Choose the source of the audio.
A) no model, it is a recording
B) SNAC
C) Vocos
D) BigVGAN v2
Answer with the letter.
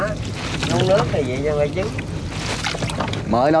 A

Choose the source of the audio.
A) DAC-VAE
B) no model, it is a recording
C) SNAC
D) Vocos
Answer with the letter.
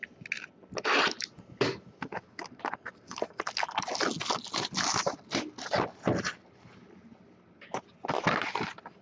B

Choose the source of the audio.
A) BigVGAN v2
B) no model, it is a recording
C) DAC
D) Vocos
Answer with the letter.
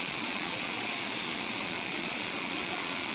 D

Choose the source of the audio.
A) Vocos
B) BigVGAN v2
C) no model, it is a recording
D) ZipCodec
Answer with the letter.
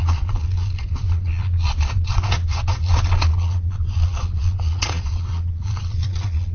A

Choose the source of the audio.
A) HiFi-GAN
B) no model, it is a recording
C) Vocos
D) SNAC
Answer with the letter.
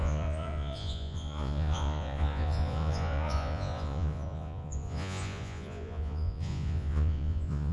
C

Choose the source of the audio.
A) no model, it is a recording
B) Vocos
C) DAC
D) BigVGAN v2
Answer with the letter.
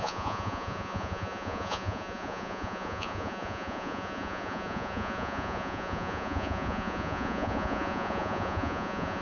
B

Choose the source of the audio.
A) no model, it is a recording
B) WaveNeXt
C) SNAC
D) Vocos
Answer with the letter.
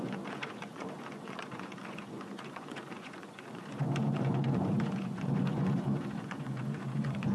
D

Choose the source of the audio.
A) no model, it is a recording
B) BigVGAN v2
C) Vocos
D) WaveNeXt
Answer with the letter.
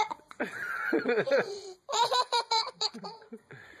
C